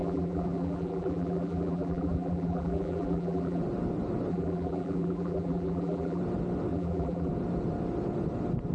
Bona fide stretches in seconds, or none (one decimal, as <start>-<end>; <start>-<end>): 3.6-4.3; 6.2-6.7; 7.3-8.7